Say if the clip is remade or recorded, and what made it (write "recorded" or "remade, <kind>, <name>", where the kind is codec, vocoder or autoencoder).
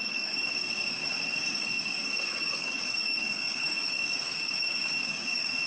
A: remade, codec, DAC